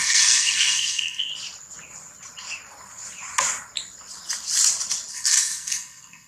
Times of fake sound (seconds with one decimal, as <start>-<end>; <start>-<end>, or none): 0.0-1.3; 5.1-6.3